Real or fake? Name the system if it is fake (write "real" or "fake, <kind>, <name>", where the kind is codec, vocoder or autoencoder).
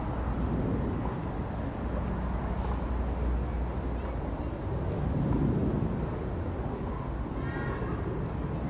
real